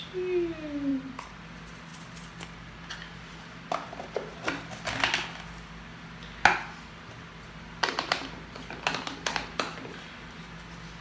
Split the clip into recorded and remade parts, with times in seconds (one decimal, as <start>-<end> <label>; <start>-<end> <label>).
0.0-11.0 recorded